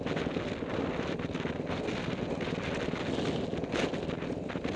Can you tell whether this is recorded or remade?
recorded